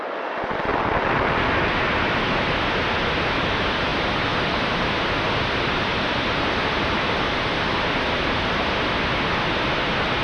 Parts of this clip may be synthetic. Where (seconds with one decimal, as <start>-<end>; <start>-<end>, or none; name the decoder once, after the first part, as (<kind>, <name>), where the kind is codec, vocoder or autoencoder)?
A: none